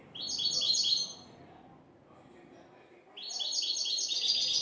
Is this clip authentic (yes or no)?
yes